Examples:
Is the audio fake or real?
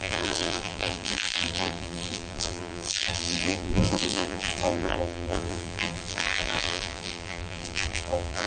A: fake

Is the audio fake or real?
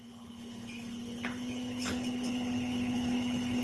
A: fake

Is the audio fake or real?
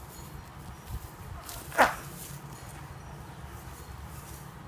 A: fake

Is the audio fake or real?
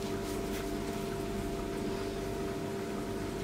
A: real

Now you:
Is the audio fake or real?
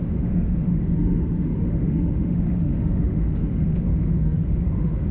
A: fake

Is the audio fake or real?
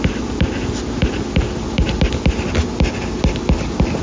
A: real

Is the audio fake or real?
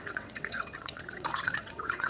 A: fake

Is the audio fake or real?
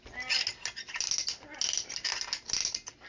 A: real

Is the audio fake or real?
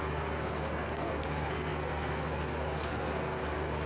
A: fake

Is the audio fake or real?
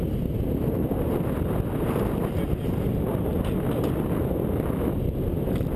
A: real